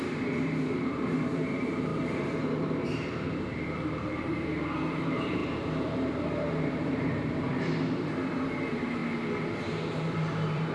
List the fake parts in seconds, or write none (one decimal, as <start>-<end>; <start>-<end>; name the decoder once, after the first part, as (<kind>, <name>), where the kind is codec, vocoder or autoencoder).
0.0-9.0 (vocoder, BigVGAN v2); 9.6-10.7